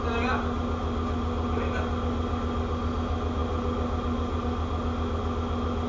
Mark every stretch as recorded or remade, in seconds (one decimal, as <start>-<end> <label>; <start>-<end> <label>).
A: 0.0-5.9 recorded